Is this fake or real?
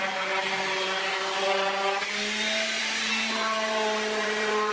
fake